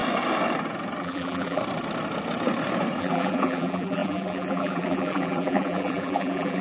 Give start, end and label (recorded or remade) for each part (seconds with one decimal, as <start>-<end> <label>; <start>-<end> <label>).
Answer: 0.0-1.0 recorded; 1.0-1.6 remade; 1.6-3.0 recorded; 3.0-6.6 remade